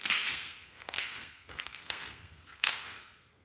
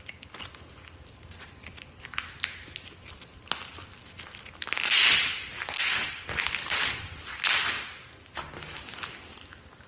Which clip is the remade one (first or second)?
first